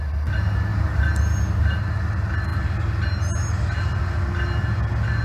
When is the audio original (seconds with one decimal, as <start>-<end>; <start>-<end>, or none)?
0.0-5.2

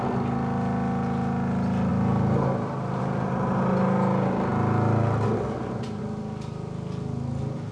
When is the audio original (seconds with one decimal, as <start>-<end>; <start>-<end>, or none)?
0.0-7.7

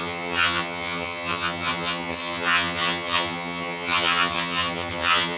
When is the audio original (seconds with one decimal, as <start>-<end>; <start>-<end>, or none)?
none

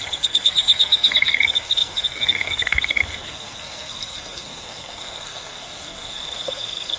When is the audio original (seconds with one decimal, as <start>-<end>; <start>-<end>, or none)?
none

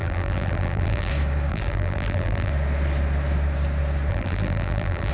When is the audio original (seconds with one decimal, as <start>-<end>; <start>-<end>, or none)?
1.1-1.5; 2.5-4.1